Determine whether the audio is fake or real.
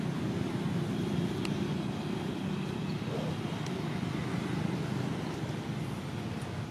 real